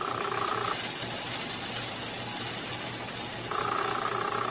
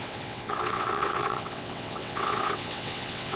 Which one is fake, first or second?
second